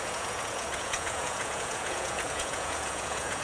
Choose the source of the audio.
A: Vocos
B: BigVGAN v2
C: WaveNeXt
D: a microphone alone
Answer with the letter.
A